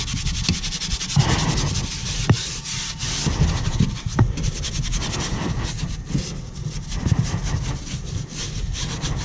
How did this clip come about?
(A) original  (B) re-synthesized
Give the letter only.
A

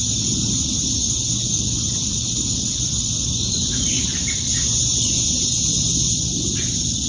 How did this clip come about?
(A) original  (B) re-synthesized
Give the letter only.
A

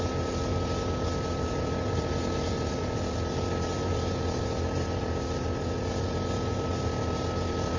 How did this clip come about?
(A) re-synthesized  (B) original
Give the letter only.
B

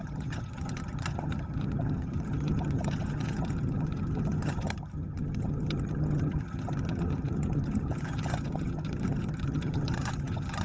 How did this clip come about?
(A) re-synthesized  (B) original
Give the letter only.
A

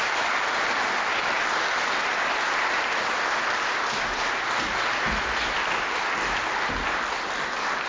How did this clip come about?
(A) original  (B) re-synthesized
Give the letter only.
A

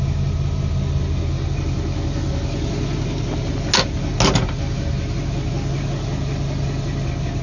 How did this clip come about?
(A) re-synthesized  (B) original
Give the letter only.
B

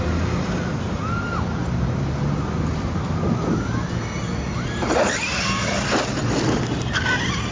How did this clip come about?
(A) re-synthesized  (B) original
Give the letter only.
B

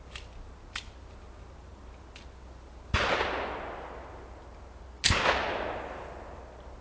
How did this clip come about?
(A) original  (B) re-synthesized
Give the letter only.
A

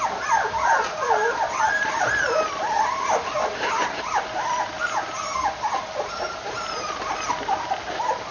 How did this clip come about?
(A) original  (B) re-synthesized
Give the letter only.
A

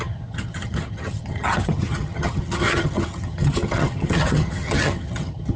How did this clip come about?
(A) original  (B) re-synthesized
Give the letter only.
B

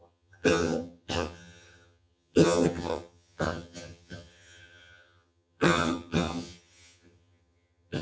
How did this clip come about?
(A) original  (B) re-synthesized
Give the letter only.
B